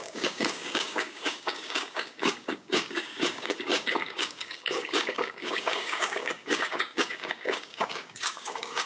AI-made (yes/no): yes